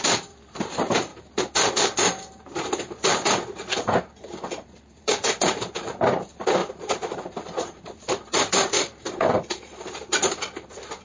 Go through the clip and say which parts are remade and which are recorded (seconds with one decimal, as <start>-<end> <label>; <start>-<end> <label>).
0.0-11.0 remade